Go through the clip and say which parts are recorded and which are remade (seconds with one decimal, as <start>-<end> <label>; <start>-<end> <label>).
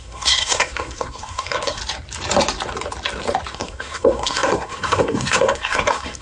0.0-1.8 remade; 1.8-3.5 recorded; 3.5-6.2 remade